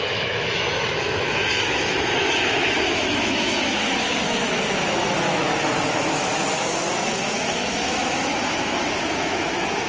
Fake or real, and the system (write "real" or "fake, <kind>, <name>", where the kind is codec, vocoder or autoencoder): fake, autoencoder, DAC-VAE